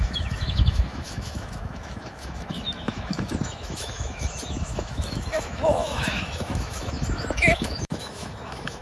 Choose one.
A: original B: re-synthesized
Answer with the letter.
B